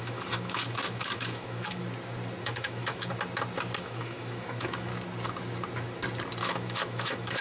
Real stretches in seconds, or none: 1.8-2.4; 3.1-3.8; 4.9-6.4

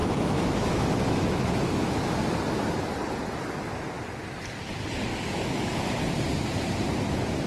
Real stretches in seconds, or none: 2.1-5.1; 5.7-7.5

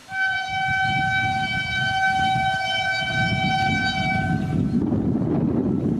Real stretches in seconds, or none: 3.5-6.0

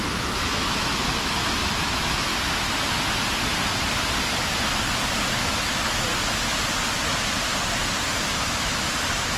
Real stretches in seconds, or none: 2.3-5.3; 6.1-8.2

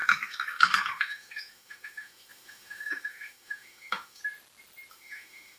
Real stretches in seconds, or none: 4.2-4.9